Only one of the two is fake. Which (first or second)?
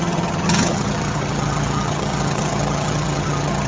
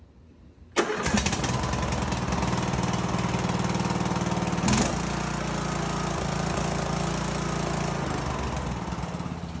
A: first